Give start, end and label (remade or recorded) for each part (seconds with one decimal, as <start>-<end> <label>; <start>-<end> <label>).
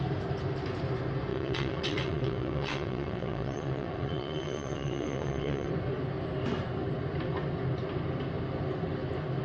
0.0-1.3 recorded; 1.3-5.7 remade; 5.7-9.4 recorded